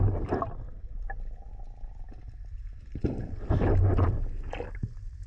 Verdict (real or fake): real